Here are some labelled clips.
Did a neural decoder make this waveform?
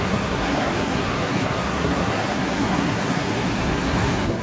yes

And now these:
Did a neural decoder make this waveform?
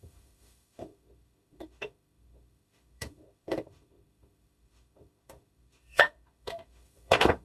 yes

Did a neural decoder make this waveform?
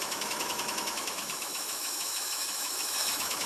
yes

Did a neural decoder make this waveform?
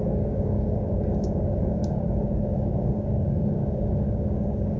yes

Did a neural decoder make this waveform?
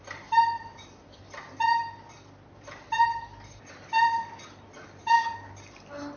no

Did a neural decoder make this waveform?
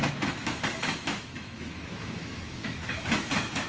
yes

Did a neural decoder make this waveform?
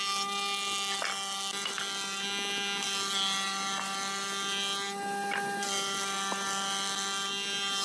no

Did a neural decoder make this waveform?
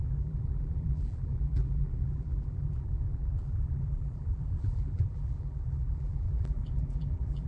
yes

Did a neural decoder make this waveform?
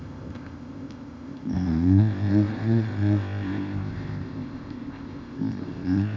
yes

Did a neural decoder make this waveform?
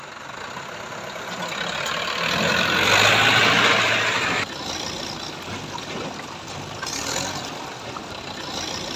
no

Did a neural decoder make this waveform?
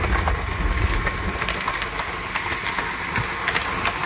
no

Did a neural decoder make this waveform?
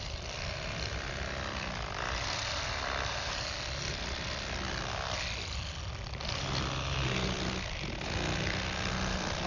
no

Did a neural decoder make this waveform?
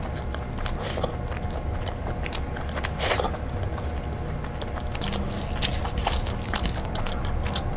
no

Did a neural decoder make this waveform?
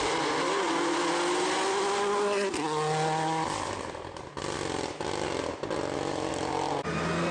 no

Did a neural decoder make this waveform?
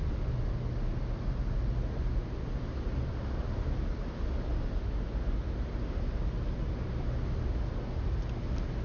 no